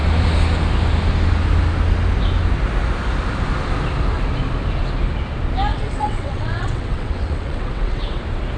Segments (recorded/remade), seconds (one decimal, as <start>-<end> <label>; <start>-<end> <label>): 0.0-5.7 recorded; 5.7-8.2 remade; 8.2-8.6 recorded